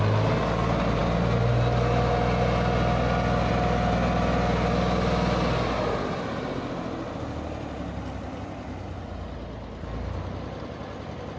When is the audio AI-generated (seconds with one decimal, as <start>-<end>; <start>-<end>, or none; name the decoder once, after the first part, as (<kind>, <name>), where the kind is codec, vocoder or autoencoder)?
none